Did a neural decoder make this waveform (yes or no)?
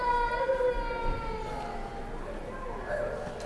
no